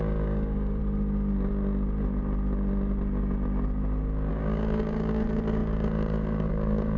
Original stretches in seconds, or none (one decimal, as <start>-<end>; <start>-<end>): 0.8-4.3